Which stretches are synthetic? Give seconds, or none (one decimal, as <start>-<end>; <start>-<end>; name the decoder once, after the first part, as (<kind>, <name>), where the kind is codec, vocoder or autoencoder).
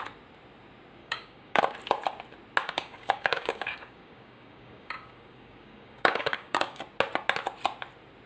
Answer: 1.0-1.6 (codec, DAC); 2.6-6.8